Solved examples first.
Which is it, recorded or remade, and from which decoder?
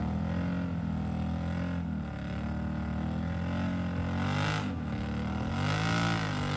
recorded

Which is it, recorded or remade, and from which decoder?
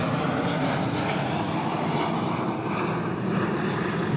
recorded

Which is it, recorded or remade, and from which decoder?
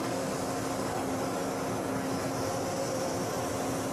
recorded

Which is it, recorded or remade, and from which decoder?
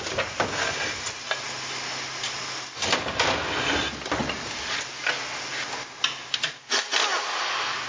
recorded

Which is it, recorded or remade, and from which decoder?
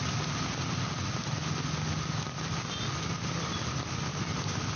recorded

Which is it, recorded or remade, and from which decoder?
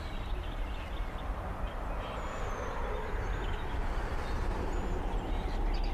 recorded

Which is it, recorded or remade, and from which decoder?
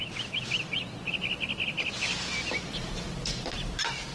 recorded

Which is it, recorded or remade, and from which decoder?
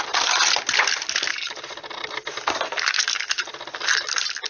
recorded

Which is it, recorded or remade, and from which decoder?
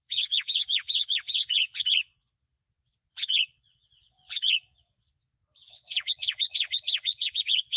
remade, vocoder, Vocos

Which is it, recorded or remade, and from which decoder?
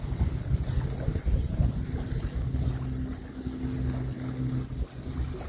recorded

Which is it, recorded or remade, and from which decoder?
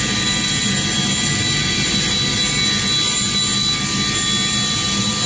recorded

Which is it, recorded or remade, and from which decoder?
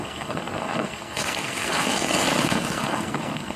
remade, codec, SNAC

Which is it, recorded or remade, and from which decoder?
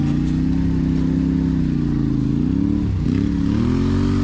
recorded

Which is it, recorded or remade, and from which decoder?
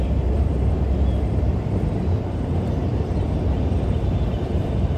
remade, vocoder, BigVGAN v2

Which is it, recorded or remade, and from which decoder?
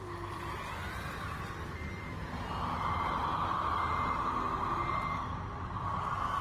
recorded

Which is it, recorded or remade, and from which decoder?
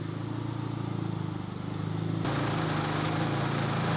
recorded